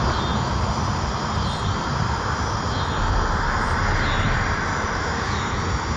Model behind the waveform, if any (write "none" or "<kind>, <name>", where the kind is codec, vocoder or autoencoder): none